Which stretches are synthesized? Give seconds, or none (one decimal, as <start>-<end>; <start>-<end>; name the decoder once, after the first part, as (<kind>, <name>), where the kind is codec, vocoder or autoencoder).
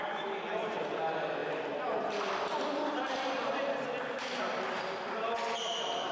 none